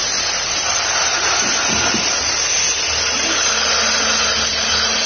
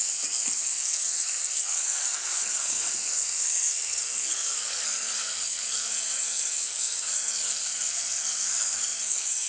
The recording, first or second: first